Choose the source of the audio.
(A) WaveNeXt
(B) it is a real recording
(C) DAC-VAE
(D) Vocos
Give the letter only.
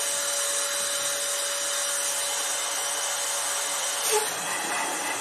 B